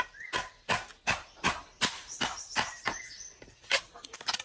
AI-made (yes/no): no